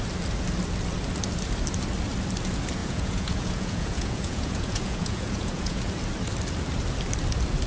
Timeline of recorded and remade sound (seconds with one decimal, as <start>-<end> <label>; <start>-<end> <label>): 0.0-2.8 recorded; 2.8-5.9 remade; 5.9-7.7 recorded